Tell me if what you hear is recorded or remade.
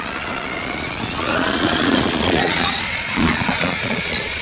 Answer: remade